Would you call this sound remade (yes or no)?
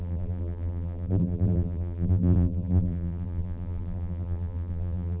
yes